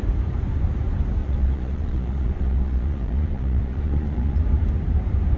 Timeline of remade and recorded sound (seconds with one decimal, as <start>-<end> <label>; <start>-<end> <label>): 0.0-1.2 recorded; 1.2-4.4 remade; 4.4-5.4 recorded